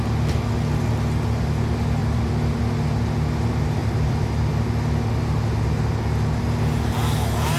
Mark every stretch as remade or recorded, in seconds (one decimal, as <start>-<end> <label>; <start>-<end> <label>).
0.0-2.0 recorded; 2.0-2.6 remade; 2.6-3.8 recorded; 3.8-4.5 remade; 4.5-7.6 recorded